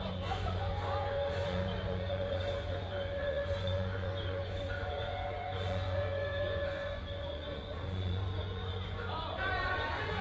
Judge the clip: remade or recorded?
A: remade